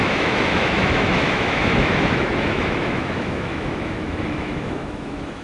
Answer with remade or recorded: remade